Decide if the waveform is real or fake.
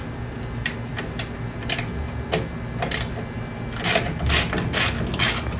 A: real